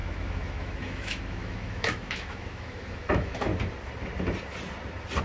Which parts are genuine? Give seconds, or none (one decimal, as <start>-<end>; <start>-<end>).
3.5-5.2